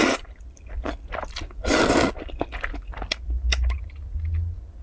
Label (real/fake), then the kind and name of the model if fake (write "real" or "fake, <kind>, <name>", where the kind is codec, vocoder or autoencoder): real